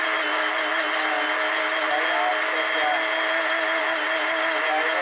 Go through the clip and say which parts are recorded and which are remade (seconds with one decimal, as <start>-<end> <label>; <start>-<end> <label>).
0.0-5.0 recorded